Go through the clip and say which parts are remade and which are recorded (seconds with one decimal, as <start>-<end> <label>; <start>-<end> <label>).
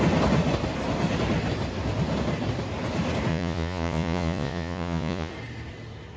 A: 0.0-3.3 recorded; 3.3-5.3 remade; 5.3-6.2 recorded